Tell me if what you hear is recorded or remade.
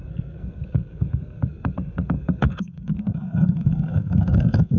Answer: remade